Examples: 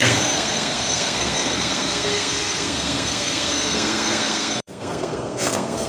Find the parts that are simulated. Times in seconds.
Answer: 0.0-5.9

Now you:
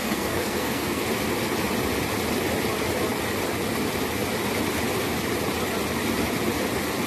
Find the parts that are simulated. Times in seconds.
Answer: 0.0-1.0

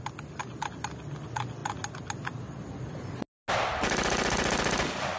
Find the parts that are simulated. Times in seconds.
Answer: none